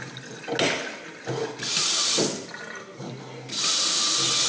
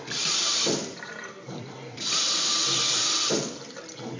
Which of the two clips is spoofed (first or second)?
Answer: second